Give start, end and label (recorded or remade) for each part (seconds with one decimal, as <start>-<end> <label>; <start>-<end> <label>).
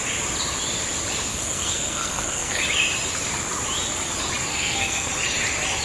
0.0-1.3 recorded; 1.3-2.6 remade; 2.6-4.5 recorded; 4.5-5.1 remade; 5.1-5.8 recorded